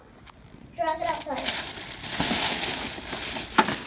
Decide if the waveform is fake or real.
real